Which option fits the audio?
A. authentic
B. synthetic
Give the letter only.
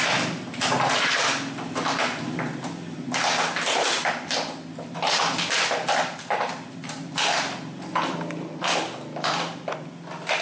A